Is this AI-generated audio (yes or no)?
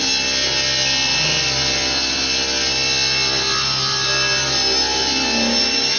no